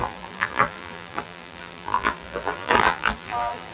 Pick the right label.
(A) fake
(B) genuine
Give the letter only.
A